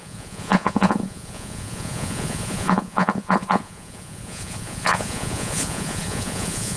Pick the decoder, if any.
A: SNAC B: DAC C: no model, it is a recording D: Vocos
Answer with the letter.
D